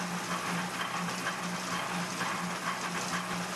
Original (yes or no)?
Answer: yes